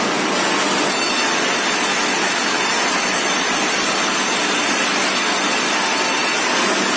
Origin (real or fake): real